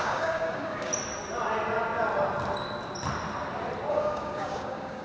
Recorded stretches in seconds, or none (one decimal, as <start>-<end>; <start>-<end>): 0.9-3.9